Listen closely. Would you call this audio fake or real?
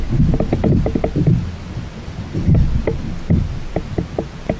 real